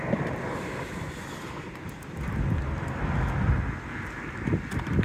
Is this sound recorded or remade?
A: recorded